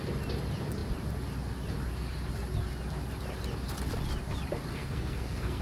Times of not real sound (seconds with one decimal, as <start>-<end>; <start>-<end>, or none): 4.7-5.6